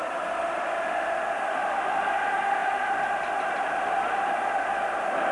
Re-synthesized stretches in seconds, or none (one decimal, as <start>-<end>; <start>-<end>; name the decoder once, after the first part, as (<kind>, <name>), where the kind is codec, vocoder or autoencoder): none